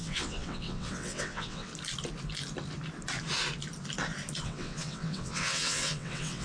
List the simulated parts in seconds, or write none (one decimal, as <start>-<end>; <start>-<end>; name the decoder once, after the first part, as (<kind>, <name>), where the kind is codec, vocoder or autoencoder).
0.0-1.7 (vocoder, WaveNeXt); 4.4-6.4